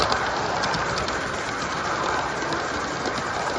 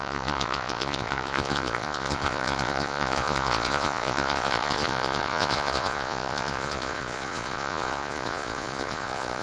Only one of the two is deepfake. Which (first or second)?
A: second